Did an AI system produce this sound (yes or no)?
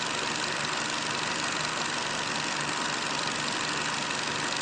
no